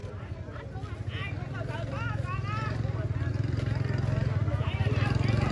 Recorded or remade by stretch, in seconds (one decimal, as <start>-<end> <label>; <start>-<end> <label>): 0.0-5.5 recorded